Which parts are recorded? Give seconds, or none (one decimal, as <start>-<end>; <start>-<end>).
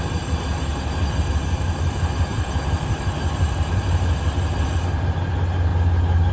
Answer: 0.0-0.7; 1.3-2.3; 4.1-6.3